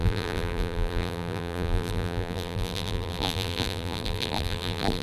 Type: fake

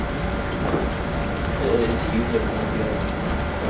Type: real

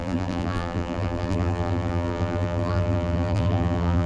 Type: fake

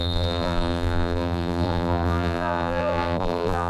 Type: fake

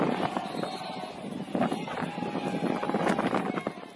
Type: real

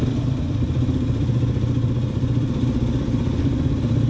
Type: fake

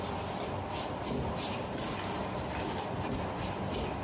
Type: real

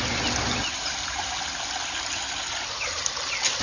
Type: real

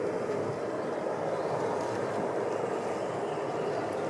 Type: fake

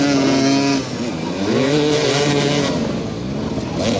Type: real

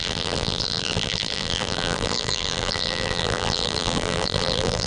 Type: fake